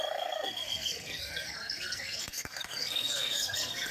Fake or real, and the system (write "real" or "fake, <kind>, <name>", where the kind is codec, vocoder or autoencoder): fake, codec, SNAC